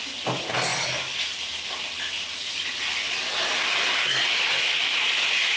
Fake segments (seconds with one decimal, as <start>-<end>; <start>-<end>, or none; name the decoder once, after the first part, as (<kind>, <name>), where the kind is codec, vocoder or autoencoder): none